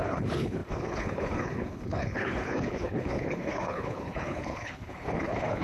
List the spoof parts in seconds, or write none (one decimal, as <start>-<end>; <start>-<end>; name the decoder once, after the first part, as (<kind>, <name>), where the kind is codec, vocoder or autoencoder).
0.0-5.6 (codec, HILCodec)